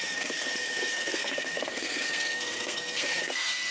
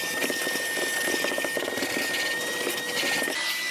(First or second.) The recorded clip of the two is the second